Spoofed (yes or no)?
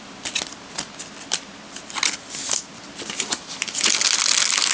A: no